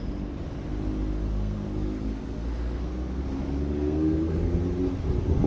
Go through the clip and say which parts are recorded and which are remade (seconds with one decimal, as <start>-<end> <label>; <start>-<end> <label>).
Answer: 0.0-1.3 recorded; 1.3-4.6 remade; 4.6-5.5 recorded